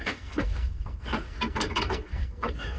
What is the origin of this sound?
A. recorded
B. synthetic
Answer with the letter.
B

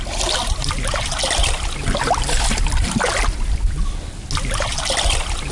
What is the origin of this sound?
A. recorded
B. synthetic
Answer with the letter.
A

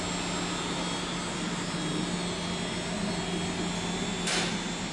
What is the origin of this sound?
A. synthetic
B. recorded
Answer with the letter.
B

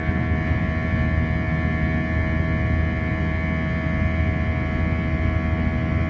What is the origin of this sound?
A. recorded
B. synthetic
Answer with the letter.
A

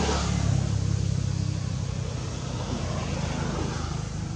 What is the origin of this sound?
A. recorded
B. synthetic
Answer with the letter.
A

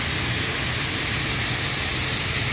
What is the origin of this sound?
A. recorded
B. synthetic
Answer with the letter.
A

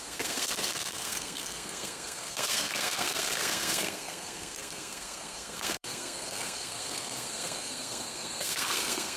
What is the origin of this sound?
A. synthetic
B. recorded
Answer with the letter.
A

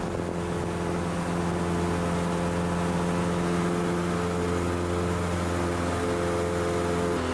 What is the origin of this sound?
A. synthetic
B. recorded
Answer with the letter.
B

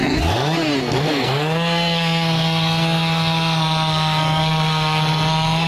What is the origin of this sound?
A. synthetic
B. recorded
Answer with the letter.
A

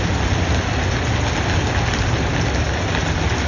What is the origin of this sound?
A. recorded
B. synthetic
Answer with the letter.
A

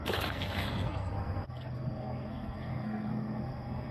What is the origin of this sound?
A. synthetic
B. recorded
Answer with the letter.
A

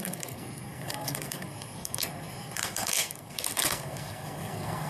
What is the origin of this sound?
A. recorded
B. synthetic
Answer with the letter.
B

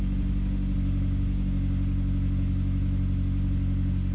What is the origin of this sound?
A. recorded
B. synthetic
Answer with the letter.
A